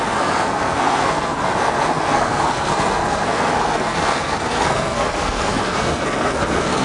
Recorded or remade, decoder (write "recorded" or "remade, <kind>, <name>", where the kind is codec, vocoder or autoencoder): remade, codec, SNAC